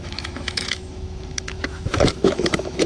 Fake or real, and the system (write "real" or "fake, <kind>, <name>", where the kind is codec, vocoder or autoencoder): fake, autoencoder, DAC-VAE